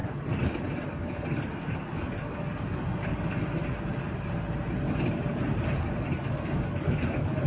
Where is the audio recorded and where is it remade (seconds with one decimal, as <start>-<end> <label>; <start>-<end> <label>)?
0.0-0.9 recorded; 0.9-3.1 remade; 3.1-6.0 recorded; 6.0-7.5 remade